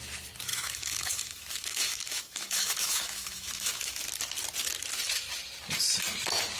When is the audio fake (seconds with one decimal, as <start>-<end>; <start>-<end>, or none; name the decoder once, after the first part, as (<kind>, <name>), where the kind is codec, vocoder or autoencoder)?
0.5-4.0 (autoencoder, DAC-VAE)